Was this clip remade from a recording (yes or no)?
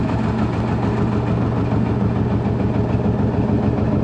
no